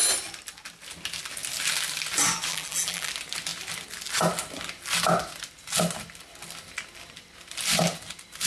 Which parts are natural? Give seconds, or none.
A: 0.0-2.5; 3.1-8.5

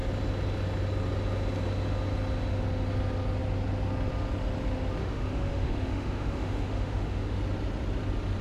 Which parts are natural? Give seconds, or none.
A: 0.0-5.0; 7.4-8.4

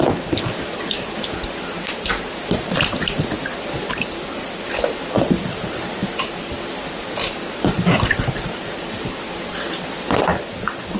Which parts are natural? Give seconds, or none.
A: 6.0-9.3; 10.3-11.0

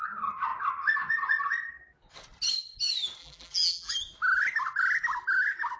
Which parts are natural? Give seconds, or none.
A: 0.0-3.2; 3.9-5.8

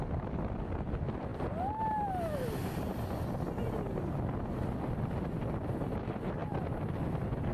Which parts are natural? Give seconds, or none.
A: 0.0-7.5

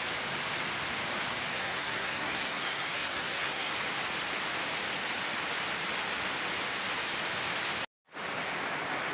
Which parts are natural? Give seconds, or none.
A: 0.0-1.5; 3.7-9.1

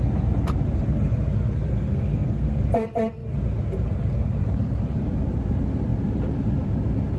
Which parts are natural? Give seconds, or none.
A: 0.0-1.7; 2.6-7.2

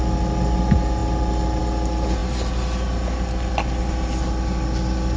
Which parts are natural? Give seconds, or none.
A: 0.0-5.2